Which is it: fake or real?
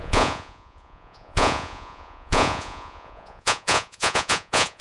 fake